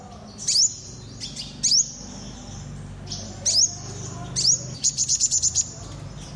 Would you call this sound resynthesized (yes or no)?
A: no